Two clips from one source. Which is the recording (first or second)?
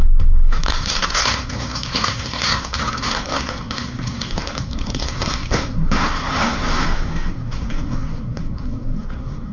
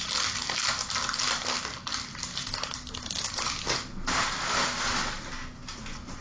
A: second